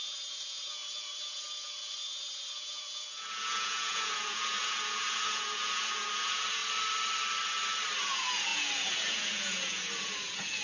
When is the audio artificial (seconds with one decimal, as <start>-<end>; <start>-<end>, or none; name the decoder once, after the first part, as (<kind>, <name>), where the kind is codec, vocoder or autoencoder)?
0.0-6.6 (vocoder, Vocos); 8.0-10.6